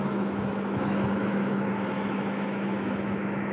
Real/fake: fake